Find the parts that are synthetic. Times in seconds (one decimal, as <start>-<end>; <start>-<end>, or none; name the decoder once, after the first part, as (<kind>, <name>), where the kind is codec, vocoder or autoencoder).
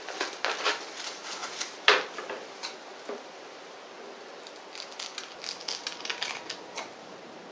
none